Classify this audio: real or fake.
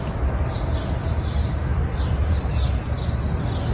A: real